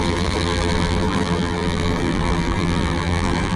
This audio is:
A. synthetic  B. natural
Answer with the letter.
A